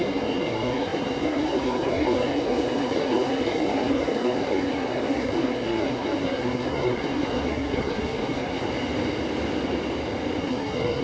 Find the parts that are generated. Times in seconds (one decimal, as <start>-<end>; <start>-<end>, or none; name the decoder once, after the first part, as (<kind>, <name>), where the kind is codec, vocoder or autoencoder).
0.0-8.7 (codec, SNAC); 10.4-11.0